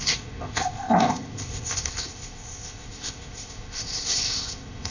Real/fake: fake